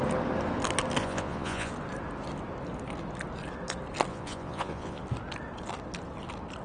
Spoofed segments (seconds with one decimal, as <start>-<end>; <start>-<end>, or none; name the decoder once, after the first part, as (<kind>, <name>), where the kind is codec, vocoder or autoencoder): 1.0-1.7 (vocoder, Vocos); 4.1-5.0